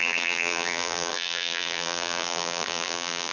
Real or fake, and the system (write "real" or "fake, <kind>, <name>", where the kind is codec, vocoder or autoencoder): fake, vocoder, BigVGAN v2